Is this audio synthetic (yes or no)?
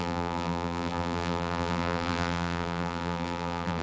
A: yes